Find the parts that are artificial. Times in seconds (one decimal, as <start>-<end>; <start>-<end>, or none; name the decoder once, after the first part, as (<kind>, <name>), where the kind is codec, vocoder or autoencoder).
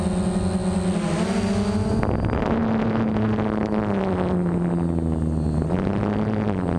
none